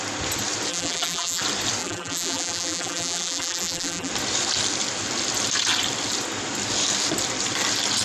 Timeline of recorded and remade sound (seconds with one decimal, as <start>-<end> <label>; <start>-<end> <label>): 0.0-0.7 recorded; 0.7-1.4 remade; 1.4-1.8 recorded; 1.8-4.1 remade; 4.1-8.0 recorded